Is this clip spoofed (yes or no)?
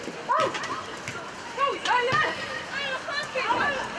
no